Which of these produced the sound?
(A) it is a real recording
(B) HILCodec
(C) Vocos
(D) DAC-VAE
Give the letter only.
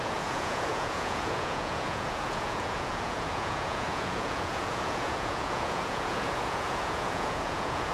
C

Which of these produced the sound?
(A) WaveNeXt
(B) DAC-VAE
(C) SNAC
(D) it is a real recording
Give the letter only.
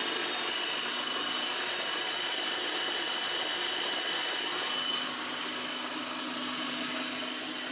D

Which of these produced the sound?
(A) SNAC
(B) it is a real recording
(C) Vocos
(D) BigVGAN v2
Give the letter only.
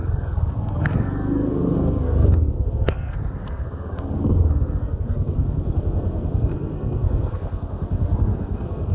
A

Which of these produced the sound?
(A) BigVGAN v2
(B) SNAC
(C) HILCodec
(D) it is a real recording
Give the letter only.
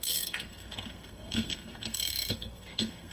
B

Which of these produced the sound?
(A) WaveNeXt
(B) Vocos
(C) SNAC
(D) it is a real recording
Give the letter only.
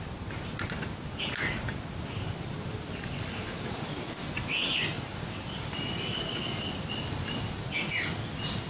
D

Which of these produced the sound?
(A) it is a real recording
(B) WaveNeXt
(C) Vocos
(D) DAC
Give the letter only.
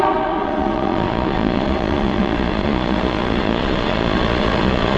C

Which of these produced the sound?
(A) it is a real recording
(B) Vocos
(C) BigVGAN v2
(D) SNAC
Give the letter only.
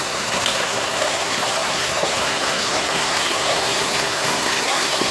D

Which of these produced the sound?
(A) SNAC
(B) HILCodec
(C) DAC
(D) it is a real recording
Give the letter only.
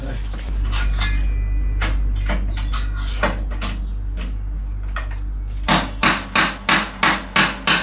D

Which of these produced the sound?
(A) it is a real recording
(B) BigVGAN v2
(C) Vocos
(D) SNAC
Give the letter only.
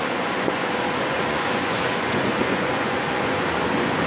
C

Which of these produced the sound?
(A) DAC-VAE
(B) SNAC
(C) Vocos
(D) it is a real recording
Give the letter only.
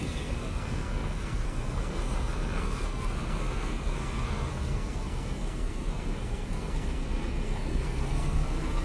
B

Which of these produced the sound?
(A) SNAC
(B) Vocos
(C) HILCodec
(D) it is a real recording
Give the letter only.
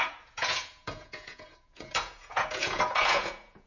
B